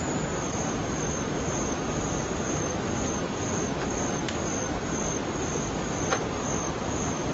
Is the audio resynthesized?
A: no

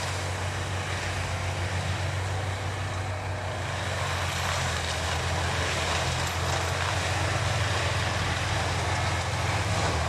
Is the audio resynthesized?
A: no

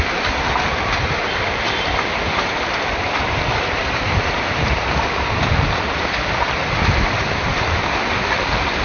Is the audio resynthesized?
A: no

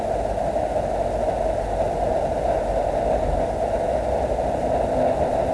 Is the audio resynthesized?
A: no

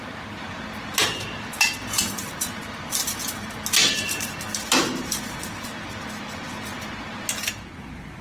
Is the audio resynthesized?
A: no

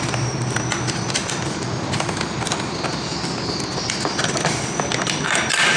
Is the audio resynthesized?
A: no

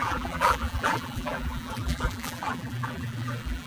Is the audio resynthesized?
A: yes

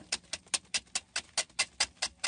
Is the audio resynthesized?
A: no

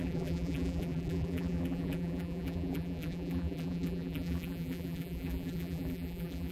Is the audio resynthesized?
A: yes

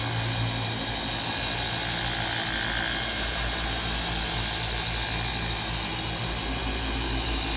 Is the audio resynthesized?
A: no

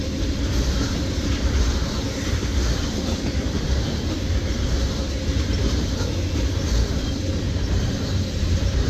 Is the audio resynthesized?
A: yes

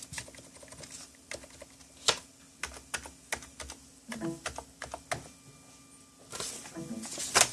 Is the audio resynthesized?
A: no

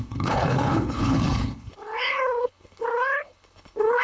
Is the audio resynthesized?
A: yes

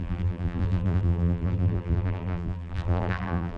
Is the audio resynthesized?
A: yes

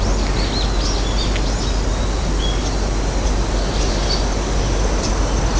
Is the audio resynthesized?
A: no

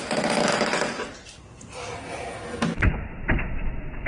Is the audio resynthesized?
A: no